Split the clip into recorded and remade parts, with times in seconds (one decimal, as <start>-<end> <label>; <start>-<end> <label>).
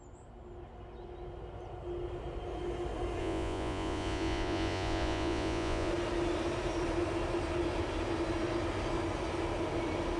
0.0-3.2 recorded; 3.2-5.9 remade; 5.9-10.2 recorded